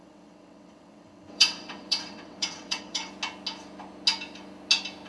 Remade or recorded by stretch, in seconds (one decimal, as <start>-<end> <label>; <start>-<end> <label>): 0.0-3.1 remade; 3.1-5.1 recorded